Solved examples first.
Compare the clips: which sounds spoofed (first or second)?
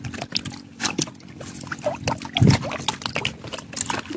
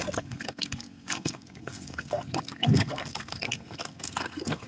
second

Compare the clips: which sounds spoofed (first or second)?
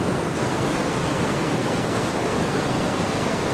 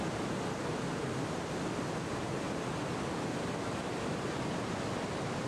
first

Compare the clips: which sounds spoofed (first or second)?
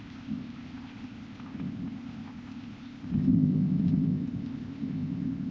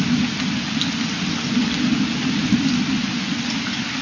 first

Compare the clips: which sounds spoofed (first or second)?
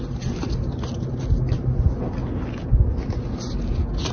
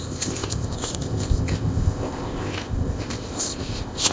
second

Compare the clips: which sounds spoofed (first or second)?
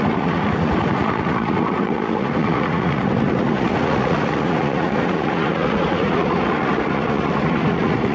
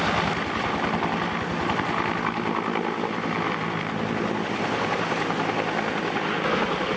first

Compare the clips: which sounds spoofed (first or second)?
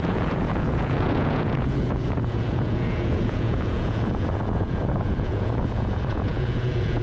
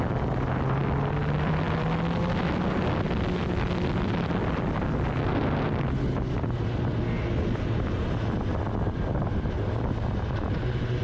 first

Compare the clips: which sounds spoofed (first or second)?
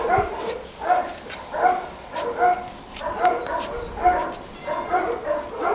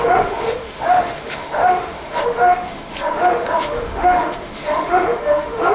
second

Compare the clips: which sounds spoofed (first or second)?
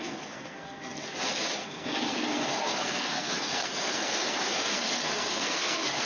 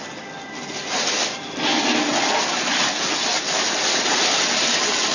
first